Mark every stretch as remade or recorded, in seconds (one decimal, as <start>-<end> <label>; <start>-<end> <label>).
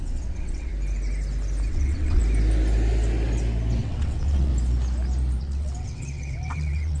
0.0-0.7 remade; 0.7-1.7 recorded; 1.7-2.2 remade; 2.2-3.8 recorded; 3.8-4.5 remade; 4.5-5.4 recorded; 5.4-7.0 remade